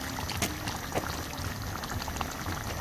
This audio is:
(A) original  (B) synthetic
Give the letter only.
A